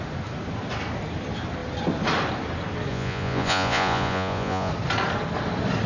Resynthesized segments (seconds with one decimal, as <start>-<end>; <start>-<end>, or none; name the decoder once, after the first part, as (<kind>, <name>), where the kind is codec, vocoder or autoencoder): 2.9-4.7 (vocoder, Vocos)

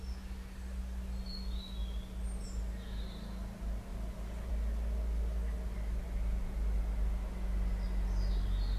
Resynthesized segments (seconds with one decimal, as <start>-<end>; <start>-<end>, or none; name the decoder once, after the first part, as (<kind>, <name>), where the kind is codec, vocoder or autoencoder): none

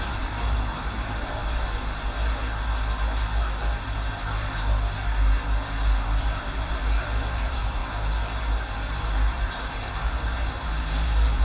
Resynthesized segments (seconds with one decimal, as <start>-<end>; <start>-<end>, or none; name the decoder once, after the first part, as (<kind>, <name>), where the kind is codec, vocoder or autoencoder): 0.0-1.4 (vocoder, BigVGAN v2); 6.2-7.8; 9.0-11.4

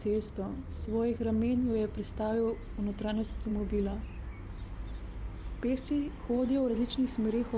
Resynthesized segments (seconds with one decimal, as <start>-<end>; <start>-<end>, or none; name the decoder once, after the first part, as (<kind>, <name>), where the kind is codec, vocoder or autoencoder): none

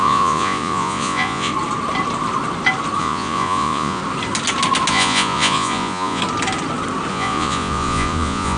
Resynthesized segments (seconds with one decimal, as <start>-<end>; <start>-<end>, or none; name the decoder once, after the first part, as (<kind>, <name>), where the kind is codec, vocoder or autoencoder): 0.0-1.5 (vocoder, Vocos); 3.0-4.0; 4.9-6.2; 7.1-8.6

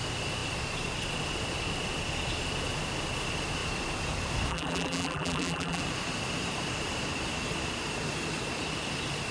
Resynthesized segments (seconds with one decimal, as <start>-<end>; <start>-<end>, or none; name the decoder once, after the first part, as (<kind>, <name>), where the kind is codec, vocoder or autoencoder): 4.5-5.8 (vocoder, BigVGAN v2)

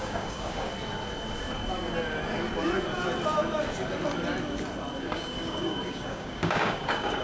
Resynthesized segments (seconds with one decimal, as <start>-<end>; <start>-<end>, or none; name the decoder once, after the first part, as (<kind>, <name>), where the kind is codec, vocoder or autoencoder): 0.0-0.7 (codec, DAC); 5.0-7.2

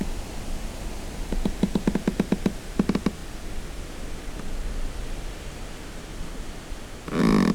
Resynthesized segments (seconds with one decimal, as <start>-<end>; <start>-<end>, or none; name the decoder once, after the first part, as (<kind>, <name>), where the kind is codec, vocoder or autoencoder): 6.1-7.5 (vocoder, BigVGAN v2)